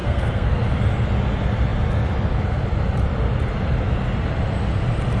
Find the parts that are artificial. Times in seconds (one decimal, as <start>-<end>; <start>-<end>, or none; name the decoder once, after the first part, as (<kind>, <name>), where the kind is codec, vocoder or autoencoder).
0.0-0.6 (codec, SNAC)